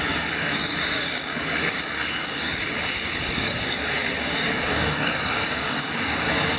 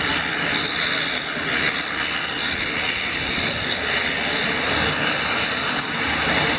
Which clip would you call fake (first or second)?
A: first